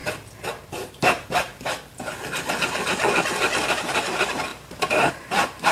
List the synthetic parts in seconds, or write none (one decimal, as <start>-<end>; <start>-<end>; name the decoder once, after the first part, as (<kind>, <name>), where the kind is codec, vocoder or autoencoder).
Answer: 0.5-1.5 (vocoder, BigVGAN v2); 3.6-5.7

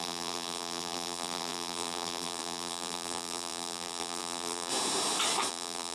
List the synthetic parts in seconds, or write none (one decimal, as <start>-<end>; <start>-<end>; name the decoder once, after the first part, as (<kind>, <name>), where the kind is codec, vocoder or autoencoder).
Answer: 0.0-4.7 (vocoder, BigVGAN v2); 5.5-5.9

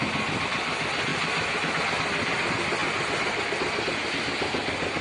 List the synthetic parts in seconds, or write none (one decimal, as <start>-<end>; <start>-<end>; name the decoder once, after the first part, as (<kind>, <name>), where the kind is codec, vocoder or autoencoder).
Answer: none